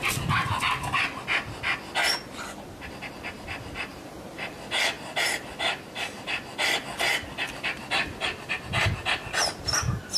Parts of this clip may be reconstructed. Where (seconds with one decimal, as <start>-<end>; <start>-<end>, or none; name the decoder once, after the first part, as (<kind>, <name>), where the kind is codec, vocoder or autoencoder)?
3.9-4.8 (vocoder, BigVGAN v2)